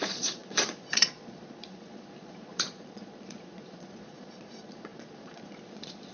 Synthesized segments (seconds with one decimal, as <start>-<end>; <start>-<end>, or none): 0.0-6.1